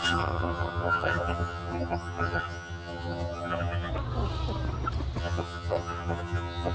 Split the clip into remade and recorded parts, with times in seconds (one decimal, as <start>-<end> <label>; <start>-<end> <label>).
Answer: 0.0-3.9 remade; 3.9-5.2 recorded; 5.2-6.7 remade